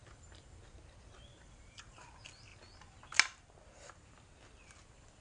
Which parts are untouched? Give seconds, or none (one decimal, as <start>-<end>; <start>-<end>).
0.6-1.3; 1.8-5.2